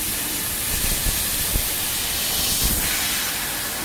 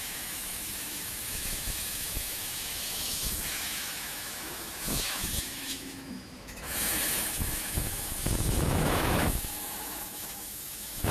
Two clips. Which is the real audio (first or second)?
first